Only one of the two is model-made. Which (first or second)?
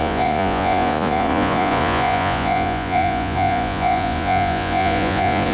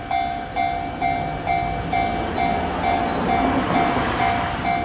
first